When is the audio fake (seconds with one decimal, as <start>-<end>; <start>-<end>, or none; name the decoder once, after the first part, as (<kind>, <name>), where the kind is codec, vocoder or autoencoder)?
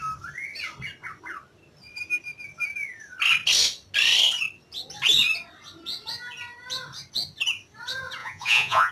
8.2-8.9 (vocoder, Vocos)